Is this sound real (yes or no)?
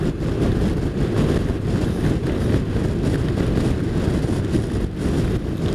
yes